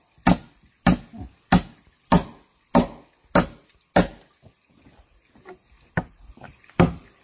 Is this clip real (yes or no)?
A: yes